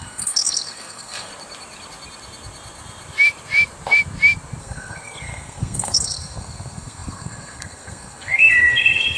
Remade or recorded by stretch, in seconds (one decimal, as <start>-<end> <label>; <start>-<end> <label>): 0.0-1.3 remade; 1.3-4.6 recorded; 4.6-9.2 remade